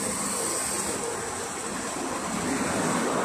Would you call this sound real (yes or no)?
yes